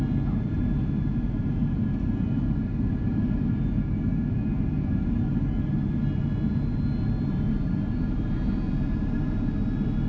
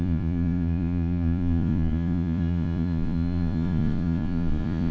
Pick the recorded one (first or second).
first